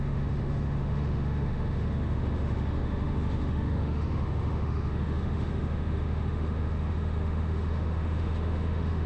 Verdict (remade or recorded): remade